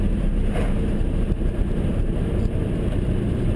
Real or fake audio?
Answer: fake